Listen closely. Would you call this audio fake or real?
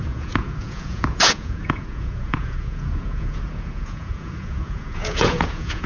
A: fake